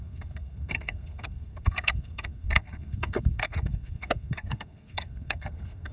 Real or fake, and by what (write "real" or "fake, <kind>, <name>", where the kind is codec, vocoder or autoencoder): fake, codec, SNAC